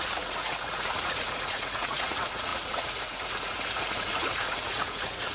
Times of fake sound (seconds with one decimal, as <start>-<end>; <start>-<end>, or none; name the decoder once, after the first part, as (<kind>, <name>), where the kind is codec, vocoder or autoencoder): 0.0-5.3 (vocoder, Vocos)